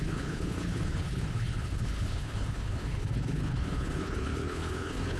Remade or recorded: remade